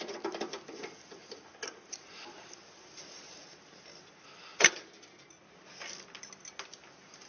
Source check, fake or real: real